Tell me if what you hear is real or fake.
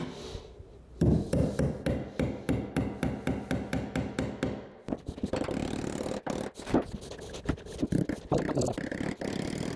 real